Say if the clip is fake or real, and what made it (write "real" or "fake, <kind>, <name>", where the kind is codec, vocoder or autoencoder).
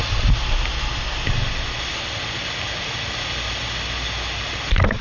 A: real